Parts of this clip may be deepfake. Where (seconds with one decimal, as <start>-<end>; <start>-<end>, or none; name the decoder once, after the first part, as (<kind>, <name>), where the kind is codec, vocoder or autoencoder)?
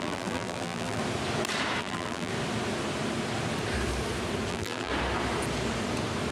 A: 0.0-1.0 (vocoder, BigVGAN v2); 1.8-2.3; 4.5-4.9